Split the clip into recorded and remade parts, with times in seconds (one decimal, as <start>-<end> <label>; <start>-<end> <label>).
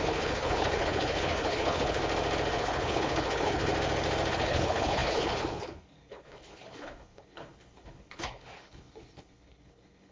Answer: 0.0-2.0 remade; 2.0-2.5 recorded; 2.5-3.7 remade; 3.7-4.3 recorded; 4.3-10.1 remade